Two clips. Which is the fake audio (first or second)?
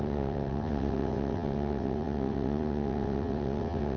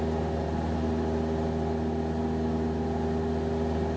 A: first